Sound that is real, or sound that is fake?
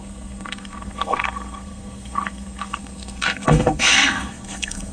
fake